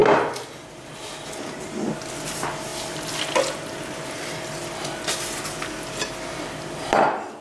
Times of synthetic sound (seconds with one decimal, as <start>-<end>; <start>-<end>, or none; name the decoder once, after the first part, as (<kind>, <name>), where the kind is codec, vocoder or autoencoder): none